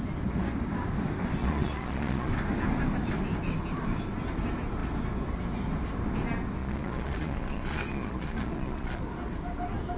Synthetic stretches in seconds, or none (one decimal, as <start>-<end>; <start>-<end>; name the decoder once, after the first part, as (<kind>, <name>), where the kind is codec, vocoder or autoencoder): 1.4-2.3 (vocoder, Vocos); 6.6-9.0